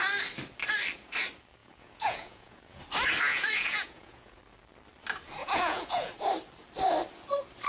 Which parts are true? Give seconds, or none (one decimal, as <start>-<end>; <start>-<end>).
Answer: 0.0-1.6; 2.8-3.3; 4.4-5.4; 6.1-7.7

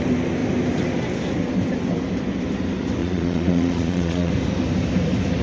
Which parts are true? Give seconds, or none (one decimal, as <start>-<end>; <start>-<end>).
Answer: 0.0-3.0; 4.3-5.4

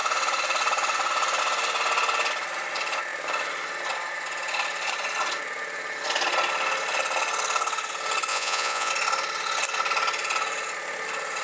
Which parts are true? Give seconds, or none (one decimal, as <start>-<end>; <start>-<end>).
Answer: 0.0-8.3; 8.9-11.4